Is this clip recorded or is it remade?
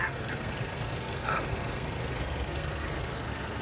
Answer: remade